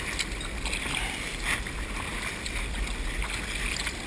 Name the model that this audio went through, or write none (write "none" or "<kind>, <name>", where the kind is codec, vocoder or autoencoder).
none